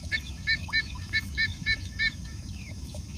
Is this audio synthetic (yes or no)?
yes